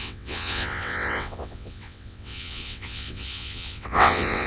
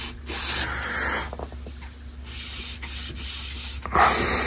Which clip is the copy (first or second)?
first